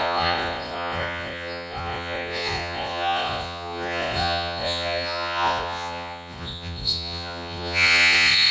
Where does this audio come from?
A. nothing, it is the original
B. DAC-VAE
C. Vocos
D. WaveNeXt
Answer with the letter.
C